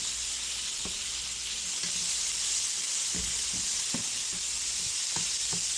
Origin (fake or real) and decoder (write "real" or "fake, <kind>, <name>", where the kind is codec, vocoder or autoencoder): real